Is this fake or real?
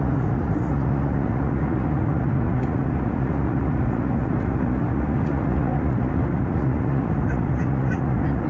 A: fake